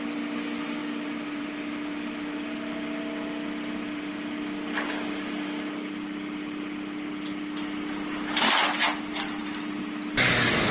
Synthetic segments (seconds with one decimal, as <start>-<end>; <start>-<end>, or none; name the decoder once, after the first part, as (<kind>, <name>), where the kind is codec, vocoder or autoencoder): none